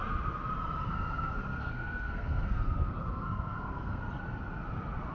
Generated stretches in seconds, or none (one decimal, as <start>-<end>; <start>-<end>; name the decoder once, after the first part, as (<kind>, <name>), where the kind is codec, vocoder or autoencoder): 0.9-4.0 (codec, SNAC)